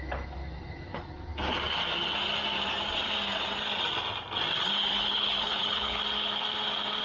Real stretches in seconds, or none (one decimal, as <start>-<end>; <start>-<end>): 0.0-4.5; 6.0-7.0